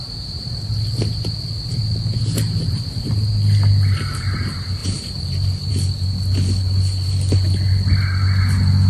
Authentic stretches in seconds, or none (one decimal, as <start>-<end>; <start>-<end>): 0.0-8.9